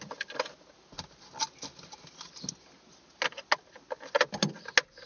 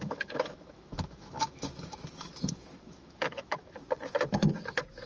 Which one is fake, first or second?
second